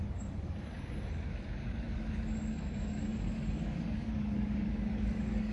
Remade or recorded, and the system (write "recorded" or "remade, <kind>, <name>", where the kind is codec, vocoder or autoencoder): remade, codec, DAC